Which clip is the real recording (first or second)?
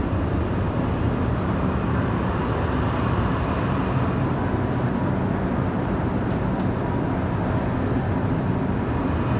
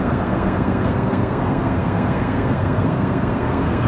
first